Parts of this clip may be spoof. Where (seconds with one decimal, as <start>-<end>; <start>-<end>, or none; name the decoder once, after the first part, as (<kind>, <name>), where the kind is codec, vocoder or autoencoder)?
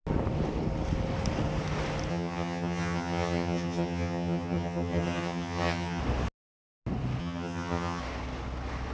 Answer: 2.1-6.0 (vocoder, HiFi-GAN); 7.2-8.0